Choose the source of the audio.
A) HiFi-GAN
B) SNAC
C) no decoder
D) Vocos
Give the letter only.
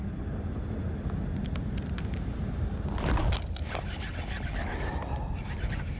C